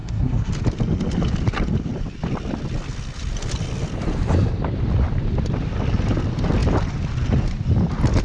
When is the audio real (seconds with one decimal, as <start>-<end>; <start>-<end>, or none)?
0.5-8.2